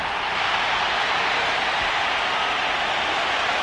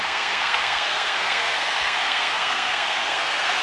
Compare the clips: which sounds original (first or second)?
first